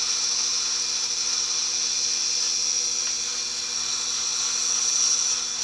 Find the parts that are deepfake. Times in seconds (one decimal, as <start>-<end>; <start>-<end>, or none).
none